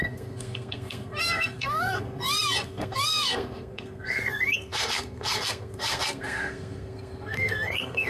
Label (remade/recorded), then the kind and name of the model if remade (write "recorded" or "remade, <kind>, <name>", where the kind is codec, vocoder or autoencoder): remade, codec, SNAC